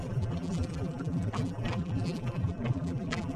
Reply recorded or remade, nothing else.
remade